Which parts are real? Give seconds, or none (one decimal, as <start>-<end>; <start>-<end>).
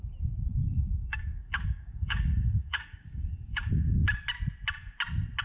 0.0-0.5; 3.7-5.4